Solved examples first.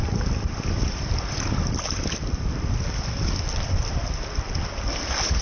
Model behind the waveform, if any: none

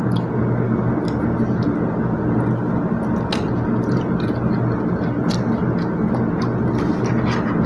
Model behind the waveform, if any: none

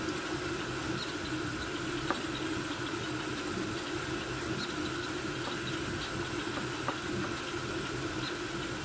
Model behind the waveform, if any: none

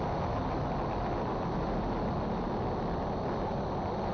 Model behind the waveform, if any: none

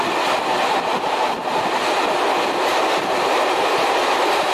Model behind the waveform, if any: none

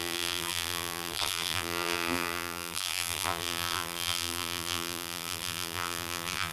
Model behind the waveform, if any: vocoder, BigVGAN v2